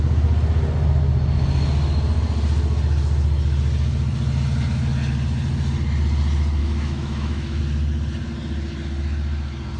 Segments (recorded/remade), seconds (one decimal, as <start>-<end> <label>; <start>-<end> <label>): 0.0-6.6 recorded; 6.6-7.6 remade; 7.6-9.8 recorded